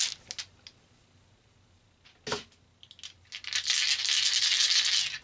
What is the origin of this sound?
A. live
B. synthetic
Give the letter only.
A